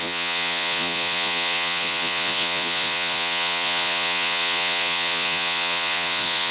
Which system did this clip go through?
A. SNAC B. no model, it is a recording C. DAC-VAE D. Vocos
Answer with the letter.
D